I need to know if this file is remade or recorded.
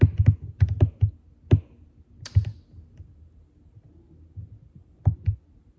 recorded